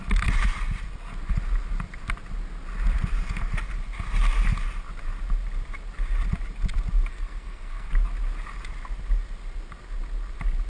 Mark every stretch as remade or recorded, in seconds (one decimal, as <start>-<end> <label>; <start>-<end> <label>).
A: 0.0-7.1 recorded; 7.1-7.9 remade; 7.9-10.7 recorded